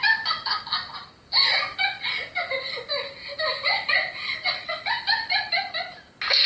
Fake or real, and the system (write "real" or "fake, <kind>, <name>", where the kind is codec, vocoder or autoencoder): real